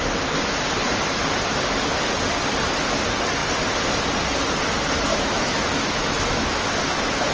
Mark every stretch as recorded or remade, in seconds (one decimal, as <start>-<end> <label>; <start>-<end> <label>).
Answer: 0.0-5.1 recorded; 5.1-7.3 remade